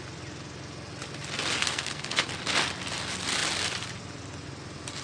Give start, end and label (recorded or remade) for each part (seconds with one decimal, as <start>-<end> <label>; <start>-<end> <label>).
0.0-1.6 recorded; 1.6-2.3 remade; 2.3-5.0 recorded